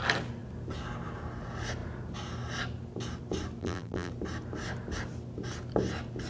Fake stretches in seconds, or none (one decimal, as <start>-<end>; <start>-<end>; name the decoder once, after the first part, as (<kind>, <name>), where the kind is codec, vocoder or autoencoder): 3.6-4.1 (vocoder, BigVGAN v2)